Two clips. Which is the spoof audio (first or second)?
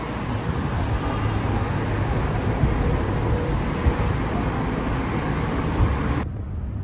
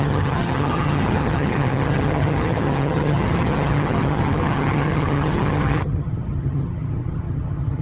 second